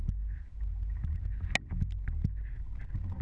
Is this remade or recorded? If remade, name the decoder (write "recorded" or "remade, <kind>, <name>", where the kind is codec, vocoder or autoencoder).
recorded